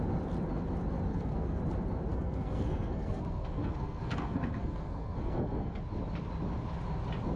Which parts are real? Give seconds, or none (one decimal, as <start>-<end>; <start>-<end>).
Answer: 0.0-1.1; 1.6-2.1; 5.8-7.4